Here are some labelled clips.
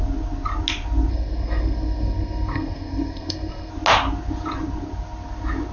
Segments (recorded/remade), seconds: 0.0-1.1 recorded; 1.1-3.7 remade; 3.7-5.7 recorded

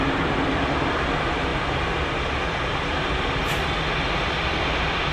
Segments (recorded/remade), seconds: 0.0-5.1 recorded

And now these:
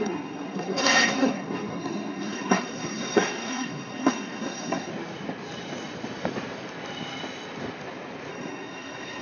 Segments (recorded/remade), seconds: 0.0-4.9 remade; 4.9-8.3 recorded; 8.3-9.2 remade

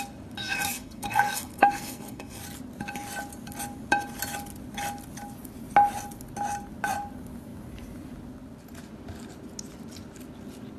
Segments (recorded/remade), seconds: 0.0-0.4 recorded; 0.4-2.4 remade; 2.4-10.8 recorded

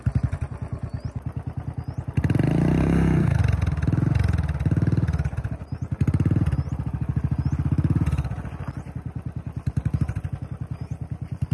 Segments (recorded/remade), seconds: 0.0-2.8 recorded; 2.8-3.4 remade; 3.4-11.5 recorded

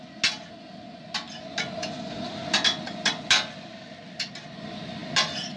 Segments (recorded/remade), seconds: 0.0-5.6 recorded

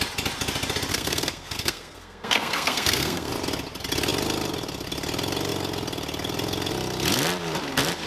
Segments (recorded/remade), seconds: 0.0-0.9 recorded; 0.9-3.3 remade; 3.3-8.1 recorded

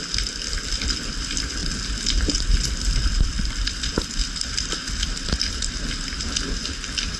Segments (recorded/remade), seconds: 0.0-7.2 recorded